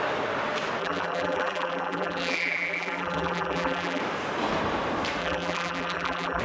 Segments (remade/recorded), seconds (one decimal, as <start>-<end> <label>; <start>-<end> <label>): 0.0-0.8 recorded; 0.8-4.0 remade; 4.0-5.2 recorded; 5.2-6.4 remade